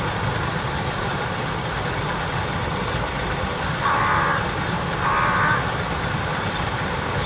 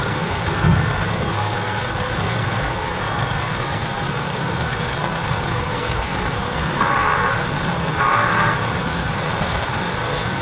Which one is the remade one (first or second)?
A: second